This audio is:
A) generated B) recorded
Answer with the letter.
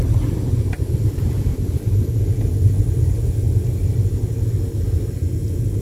B